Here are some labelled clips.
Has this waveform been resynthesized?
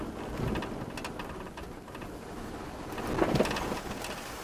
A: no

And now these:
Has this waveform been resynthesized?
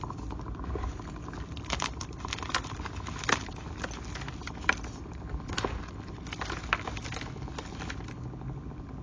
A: no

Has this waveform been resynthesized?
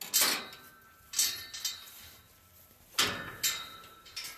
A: no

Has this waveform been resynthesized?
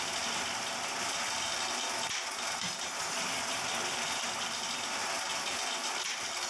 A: no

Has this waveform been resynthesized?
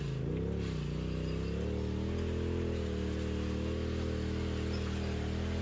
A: no